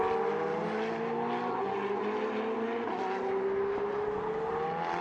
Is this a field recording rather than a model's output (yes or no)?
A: yes